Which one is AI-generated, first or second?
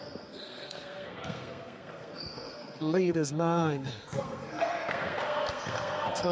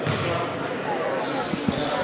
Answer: first